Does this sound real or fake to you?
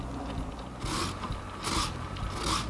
real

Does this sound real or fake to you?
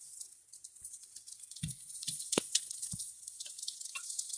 fake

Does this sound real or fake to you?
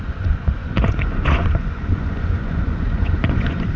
fake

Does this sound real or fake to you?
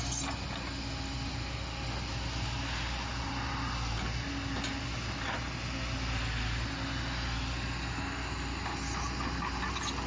real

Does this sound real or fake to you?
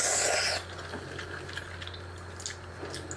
real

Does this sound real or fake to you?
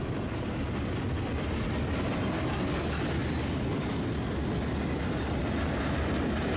real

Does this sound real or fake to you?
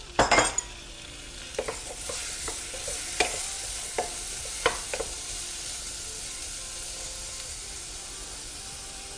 real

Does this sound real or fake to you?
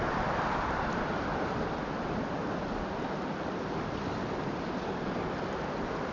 real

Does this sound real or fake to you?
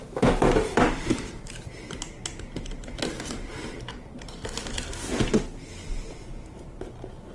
real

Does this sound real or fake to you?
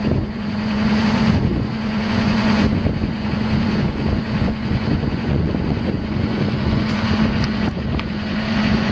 fake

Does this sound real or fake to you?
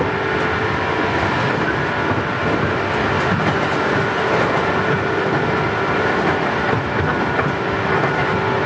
real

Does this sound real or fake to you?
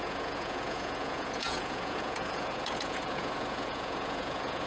fake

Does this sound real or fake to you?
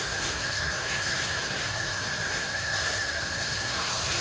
fake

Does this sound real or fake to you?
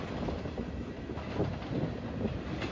real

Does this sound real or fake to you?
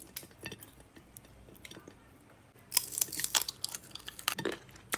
real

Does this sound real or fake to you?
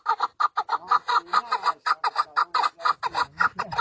real